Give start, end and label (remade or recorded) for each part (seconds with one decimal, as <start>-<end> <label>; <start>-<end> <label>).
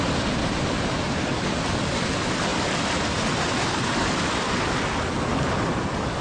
0.0-6.2 recorded